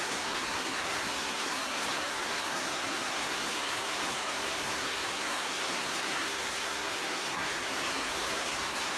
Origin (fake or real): fake